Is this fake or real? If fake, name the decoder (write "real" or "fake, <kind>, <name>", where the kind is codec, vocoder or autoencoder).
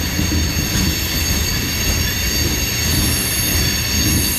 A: real